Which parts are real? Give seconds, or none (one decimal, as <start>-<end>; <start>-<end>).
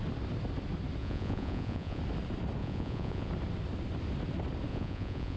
0.0-1.0; 2.0-2.6; 3.3-4.7